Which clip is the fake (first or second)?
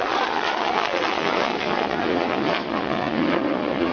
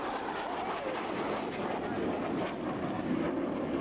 first